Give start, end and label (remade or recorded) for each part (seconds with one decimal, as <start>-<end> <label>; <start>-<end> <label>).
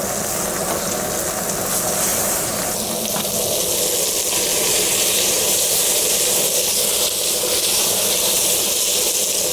0.0-2.1 recorded; 2.1-2.6 remade; 2.6-4.5 recorded; 4.5-6.4 remade; 6.4-7.7 recorded; 7.7-8.7 remade; 8.7-9.5 recorded